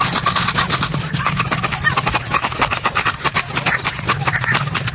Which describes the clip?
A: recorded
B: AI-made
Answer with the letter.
A